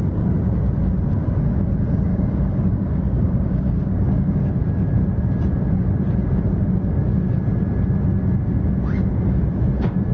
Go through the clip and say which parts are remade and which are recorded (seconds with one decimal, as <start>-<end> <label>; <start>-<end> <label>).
0.0-2.1 recorded; 2.1-4.5 remade; 4.5-10.1 recorded